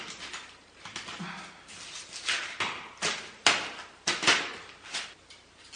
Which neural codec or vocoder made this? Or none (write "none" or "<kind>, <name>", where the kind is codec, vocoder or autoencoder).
none